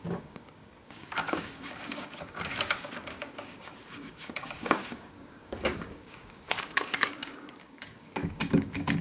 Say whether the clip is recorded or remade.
remade